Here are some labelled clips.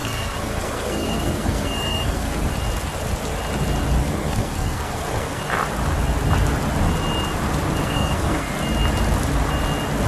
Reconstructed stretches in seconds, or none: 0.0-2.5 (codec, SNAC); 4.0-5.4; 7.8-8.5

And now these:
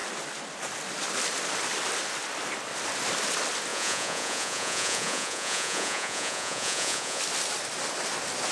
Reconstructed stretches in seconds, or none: 3.7-7.2 (vocoder, Vocos)

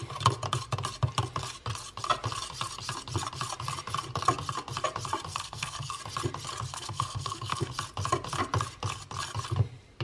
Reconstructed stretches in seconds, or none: 5.3-6.0 (codec, SNAC); 6.7-7.7

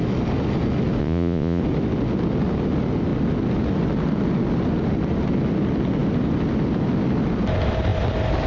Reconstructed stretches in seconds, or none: 1.0-1.6 (vocoder, Vocos)